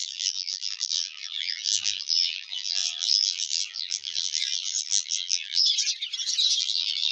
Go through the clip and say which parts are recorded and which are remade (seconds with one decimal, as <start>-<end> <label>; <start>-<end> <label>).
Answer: 0.0-5.6 remade; 5.6-6.6 recorded; 6.6-7.1 remade